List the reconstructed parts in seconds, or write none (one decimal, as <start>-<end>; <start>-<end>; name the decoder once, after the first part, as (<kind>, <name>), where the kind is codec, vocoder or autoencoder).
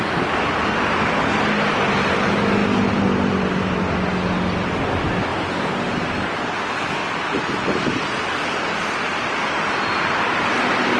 none